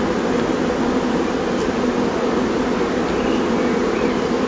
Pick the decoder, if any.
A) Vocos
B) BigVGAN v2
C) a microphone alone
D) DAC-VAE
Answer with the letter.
C